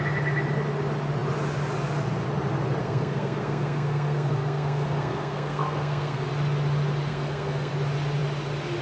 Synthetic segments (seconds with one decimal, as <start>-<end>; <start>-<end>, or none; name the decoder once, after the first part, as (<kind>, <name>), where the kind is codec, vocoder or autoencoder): 2.8-6.3 (codec, SNAC); 7.1-7.7